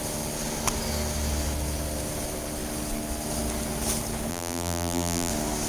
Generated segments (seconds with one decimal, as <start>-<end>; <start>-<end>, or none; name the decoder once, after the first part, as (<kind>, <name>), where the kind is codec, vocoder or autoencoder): 4.3-5.3 (vocoder, BigVGAN v2)